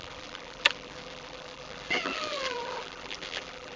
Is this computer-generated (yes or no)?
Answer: yes